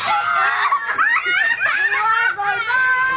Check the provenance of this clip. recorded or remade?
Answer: recorded